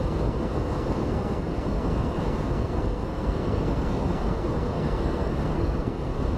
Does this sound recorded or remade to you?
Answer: remade